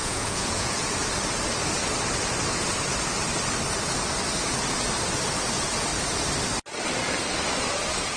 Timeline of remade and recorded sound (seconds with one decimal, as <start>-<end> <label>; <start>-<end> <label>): 0.0-0.9 remade; 0.9-8.2 recorded